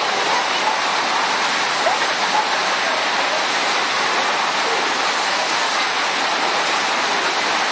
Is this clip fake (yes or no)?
no